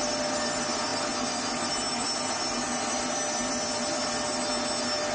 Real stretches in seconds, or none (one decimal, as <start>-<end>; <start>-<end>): 0.0-5.1